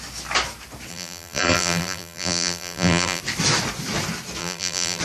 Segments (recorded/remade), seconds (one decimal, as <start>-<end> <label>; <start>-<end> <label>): 0.0-0.9 recorded; 0.9-3.2 remade; 3.2-4.4 recorded; 4.4-5.0 remade